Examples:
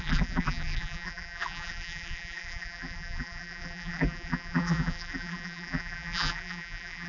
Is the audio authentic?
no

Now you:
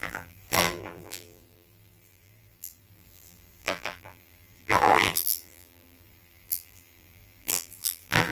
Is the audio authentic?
no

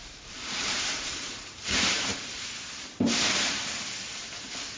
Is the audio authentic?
no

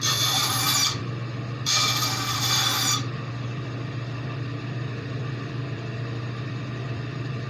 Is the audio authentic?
no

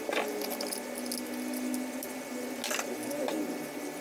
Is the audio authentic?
yes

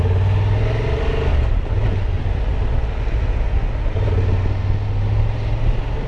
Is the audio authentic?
yes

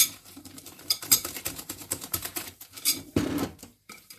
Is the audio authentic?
no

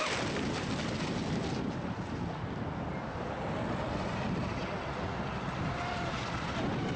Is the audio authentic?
yes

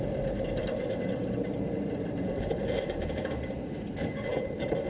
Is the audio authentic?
no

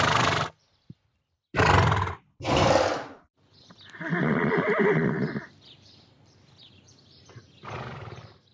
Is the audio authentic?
no